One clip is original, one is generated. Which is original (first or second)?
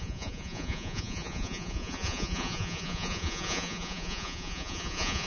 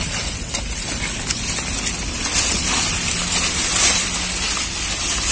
second